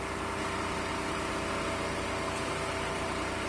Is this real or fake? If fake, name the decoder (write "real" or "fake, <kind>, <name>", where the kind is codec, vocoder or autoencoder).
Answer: real